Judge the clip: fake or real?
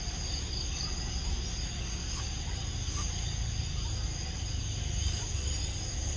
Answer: real